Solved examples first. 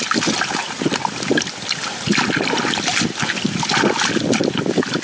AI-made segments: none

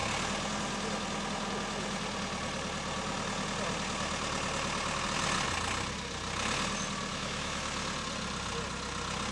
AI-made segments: 7.1-7.6 (autoencoder, DAC-VAE)

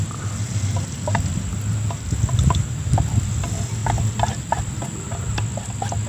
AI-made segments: none

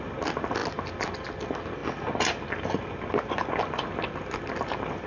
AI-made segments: none